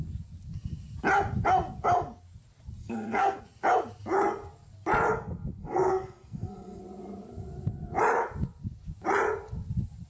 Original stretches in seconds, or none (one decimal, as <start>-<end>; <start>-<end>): 0.0-2.8; 3.4-5.6; 6.8-10.1